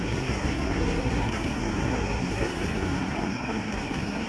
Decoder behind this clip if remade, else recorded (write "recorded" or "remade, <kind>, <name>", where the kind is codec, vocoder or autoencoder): remade, codec, SNAC